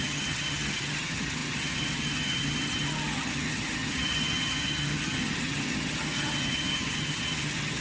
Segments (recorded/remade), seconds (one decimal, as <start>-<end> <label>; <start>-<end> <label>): 0.0-7.8 remade